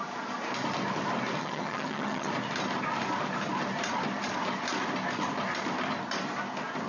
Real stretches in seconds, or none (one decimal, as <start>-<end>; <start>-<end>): 0.0-1.4; 2.3-6.9